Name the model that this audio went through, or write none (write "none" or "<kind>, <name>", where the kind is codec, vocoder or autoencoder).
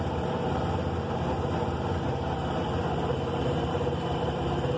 vocoder, BigVGAN v2